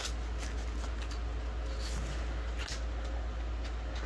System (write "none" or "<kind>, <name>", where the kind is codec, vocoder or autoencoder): none